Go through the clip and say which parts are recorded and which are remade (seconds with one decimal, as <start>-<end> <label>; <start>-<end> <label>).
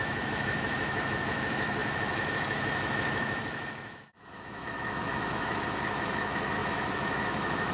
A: 0.0-7.7 remade